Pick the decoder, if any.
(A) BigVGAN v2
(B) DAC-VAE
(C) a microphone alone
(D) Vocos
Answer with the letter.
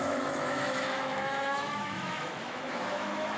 B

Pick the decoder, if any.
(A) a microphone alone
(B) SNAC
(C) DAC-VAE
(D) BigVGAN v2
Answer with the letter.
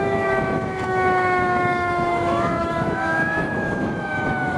C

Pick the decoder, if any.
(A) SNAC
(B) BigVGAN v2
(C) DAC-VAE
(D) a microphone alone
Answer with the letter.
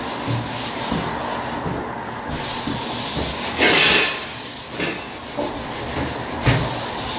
D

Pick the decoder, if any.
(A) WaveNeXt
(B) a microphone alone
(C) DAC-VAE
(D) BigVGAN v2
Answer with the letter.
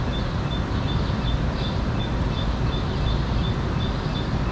B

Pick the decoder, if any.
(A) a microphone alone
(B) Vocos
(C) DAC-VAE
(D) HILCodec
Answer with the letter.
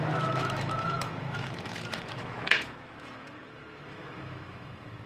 C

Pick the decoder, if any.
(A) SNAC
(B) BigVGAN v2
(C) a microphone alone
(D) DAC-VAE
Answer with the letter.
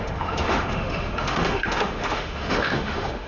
D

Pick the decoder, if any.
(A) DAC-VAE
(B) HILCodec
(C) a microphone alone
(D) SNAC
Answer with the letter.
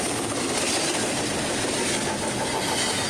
C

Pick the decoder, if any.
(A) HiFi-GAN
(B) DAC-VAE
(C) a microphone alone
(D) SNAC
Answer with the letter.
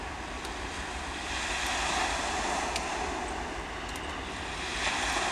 C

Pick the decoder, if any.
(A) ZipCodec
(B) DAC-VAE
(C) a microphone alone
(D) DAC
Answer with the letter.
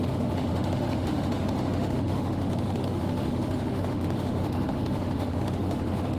B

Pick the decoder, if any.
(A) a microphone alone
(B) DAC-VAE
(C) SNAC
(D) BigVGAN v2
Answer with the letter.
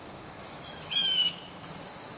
B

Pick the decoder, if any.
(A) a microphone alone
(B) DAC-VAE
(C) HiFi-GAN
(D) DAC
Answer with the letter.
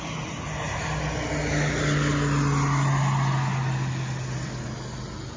A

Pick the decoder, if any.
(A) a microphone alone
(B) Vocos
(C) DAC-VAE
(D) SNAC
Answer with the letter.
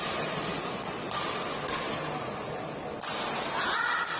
A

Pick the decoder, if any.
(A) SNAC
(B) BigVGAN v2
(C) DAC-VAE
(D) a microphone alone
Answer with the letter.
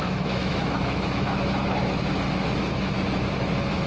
C